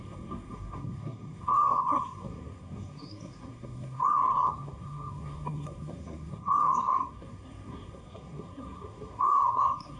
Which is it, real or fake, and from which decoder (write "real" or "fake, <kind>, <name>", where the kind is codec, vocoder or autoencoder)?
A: fake, codec, SNAC